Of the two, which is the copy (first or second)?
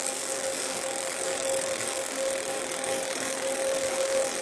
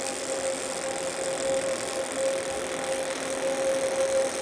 first